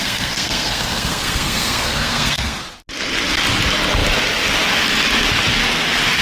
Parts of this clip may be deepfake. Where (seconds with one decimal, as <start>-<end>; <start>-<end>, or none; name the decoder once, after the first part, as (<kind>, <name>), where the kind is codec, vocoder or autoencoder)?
0.0-2.6 (codec, SNAC)